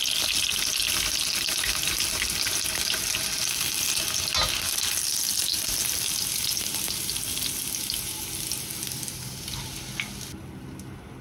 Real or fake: real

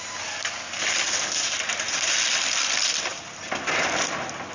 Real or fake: real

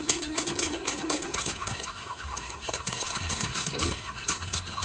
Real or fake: fake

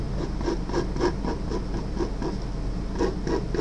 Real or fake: real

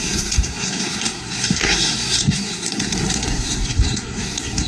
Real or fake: fake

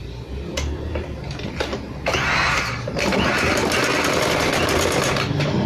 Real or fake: real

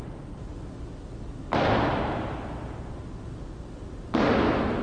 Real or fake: real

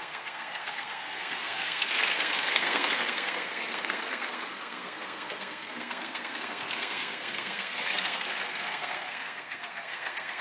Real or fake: fake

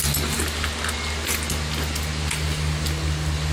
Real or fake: real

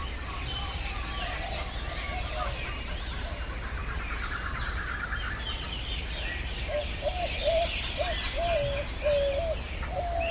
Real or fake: real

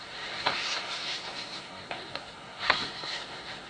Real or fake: fake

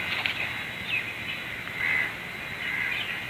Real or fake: real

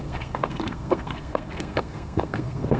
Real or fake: fake